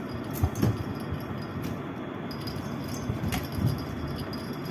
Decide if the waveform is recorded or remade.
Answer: recorded